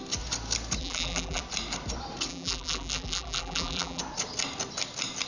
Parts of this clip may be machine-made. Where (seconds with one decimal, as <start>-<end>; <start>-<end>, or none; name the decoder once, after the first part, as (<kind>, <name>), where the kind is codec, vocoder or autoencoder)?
0.8-1.4 (vocoder, BigVGAN v2); 2.3-4.0

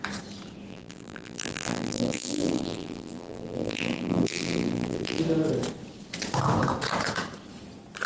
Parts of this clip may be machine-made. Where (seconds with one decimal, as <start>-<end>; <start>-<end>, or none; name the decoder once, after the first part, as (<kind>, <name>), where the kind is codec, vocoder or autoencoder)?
0.7-5.2 (vocoder, BigVGAN v2)

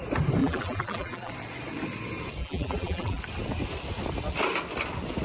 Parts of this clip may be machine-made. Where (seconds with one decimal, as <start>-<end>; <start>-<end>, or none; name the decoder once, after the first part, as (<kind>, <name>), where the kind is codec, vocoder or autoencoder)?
0.4-1.3 (vocoder, BigVGAN v2); 2.4-3.2

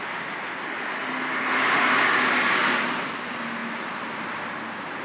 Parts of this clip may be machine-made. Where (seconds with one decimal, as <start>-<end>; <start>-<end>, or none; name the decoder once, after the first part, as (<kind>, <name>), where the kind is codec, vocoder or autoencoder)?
none